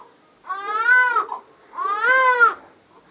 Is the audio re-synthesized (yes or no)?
no